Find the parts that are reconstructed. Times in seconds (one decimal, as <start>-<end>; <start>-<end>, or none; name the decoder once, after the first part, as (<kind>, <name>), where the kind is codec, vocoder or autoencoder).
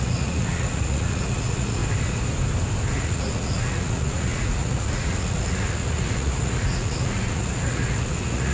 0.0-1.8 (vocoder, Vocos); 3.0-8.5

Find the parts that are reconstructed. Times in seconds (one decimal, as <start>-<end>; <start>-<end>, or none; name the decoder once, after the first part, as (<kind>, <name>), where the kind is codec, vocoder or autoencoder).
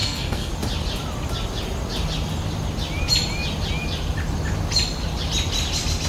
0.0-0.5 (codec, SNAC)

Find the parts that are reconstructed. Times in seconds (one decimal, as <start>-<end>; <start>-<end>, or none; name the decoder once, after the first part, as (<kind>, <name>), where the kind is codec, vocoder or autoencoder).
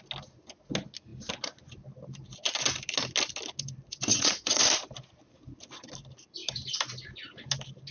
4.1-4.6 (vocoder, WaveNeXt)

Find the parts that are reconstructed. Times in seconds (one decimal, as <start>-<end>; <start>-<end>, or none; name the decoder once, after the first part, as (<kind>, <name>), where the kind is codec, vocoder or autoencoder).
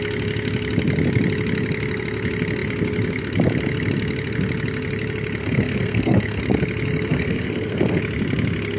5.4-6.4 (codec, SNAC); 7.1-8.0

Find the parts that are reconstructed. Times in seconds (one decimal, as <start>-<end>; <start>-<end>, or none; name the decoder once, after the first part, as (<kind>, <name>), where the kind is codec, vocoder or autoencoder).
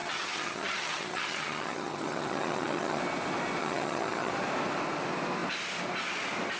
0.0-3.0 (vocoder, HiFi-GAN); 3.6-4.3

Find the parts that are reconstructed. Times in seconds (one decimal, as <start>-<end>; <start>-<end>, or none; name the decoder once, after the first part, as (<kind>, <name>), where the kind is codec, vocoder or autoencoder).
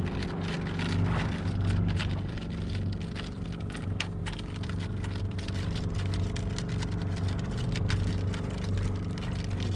none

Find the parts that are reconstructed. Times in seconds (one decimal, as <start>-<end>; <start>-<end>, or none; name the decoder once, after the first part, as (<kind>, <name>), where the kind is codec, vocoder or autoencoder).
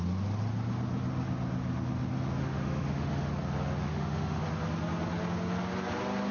2.4-3.3 (autoencoder, DAC-VAE); 3.9-4.4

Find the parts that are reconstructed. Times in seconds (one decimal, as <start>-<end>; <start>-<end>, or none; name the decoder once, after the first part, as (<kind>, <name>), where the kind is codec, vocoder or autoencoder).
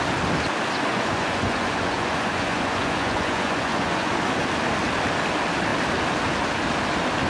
0.9-4.1 (vocoder, Vocos)